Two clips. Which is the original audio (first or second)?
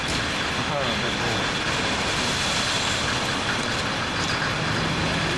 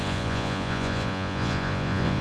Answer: first